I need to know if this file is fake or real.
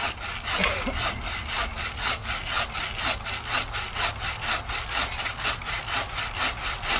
real